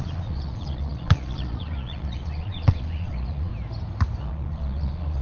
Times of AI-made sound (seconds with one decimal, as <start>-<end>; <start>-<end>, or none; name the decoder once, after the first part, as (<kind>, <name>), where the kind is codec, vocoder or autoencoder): 0.0-3.5 (vocoder, Vocos); 4.2-5.2